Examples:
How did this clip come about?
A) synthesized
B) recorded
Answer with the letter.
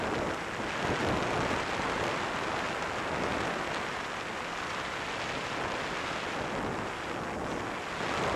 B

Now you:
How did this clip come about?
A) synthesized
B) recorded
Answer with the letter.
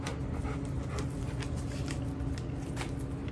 B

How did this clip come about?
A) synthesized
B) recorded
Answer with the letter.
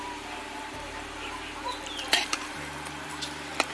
A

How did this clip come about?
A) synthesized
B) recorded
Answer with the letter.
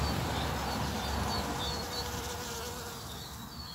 B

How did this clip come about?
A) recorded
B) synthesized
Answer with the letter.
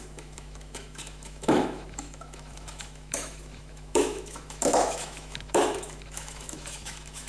B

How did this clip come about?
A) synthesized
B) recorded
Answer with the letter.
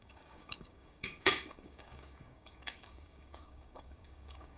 A